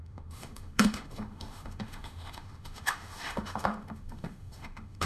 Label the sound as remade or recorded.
remade